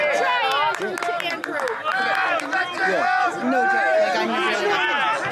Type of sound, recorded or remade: recorded